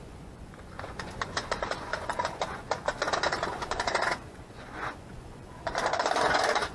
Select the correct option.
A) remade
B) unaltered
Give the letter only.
A